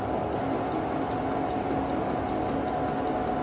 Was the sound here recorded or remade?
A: recorded